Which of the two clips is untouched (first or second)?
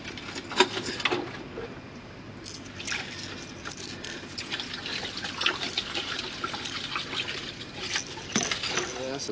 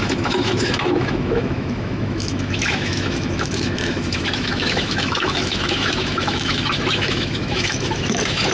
first